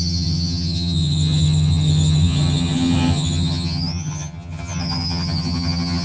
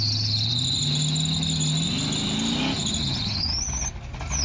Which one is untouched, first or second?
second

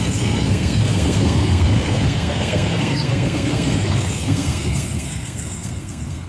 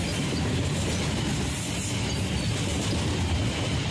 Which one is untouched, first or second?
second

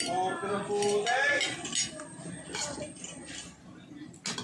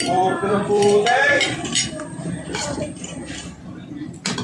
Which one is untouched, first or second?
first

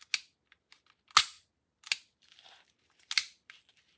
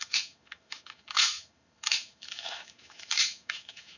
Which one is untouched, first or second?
first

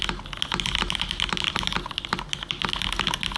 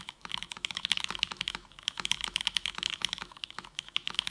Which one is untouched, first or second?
first